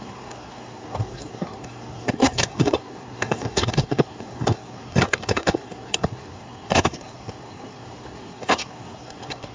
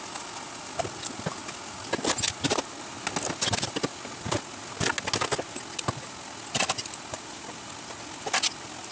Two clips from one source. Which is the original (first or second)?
second